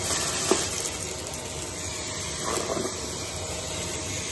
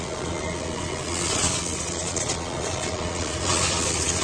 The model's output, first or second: second